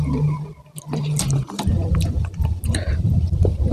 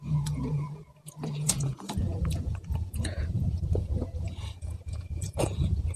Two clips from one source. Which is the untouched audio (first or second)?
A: first